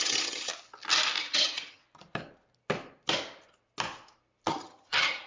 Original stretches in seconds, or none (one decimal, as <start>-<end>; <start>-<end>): 0.5-1.2; 1.8-4.5

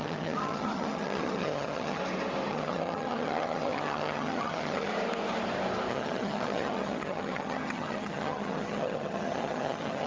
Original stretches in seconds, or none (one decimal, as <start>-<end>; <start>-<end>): 2.0-2.5; 4.9-5.9

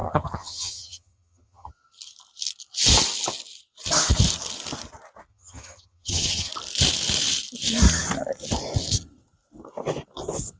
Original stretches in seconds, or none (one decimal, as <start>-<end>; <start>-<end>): 1.7-5.3; 6.5-10.6